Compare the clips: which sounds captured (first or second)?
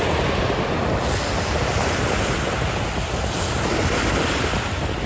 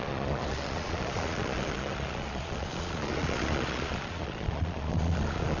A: first